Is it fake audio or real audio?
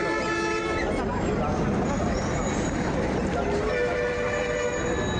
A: real